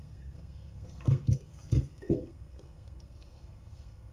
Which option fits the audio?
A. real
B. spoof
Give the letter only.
B